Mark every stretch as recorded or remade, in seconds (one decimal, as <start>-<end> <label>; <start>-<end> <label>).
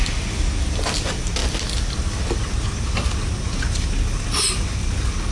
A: 0.0-5.3 recorded